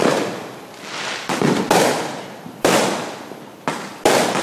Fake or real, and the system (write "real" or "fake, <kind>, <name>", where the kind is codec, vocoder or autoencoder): real